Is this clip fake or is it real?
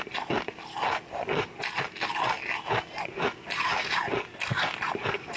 real